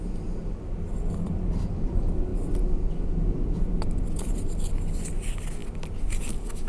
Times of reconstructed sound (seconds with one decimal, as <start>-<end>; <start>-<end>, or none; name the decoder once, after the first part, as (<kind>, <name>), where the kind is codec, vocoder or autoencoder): none